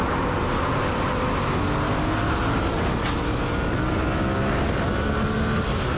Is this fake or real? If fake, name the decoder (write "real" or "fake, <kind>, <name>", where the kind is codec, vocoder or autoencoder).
real